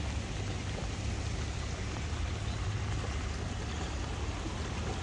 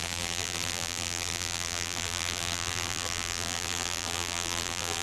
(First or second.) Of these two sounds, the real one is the first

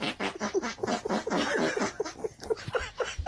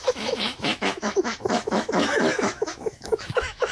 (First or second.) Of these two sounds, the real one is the first